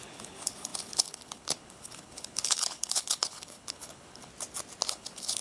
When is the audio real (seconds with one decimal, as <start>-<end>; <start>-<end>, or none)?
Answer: 4.3-4.9